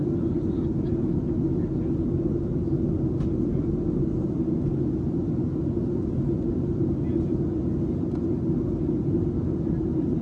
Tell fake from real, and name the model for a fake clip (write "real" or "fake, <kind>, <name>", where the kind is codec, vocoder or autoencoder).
real